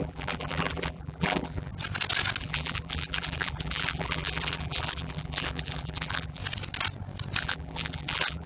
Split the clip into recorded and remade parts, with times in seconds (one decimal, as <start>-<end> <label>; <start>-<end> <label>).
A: 0.0-1.7 remade; 1.7-2.4 recorded; 2.4-6.4 remade; 6.4-7.4 recorded; 7.4-8.5 remade